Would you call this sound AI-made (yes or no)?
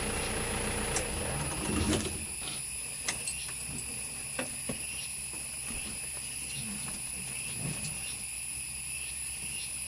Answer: no